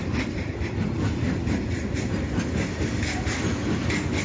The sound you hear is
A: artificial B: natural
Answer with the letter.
B